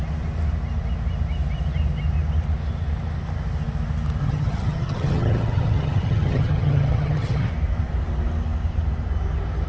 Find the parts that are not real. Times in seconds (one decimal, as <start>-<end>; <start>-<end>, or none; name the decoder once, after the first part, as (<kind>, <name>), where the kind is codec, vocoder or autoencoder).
4.2-7.5 (vocoder, HiFi-GAN)